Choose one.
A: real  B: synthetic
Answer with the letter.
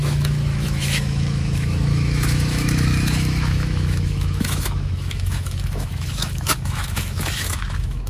B